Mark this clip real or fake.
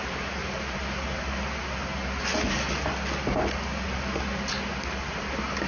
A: real